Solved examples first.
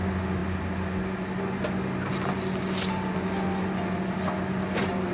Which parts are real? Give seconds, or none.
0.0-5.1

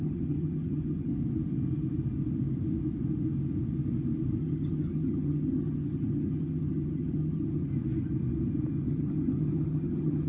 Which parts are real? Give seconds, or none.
1.1-4.4; 7.7-8.9